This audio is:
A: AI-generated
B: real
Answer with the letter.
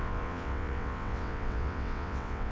A